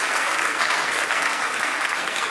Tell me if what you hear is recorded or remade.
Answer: remade